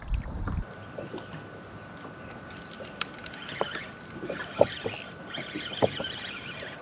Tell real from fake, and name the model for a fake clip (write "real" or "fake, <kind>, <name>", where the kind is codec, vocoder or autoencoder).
fake, vocoder, BigVGAN v2